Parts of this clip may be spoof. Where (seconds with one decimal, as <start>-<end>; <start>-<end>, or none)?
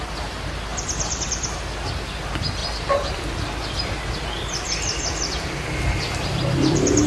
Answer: 0.7-1.6; 2.6-7.1